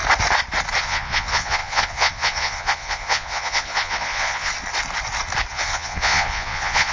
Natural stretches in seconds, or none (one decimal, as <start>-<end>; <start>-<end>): 0.0-0.8; 4.5-5.5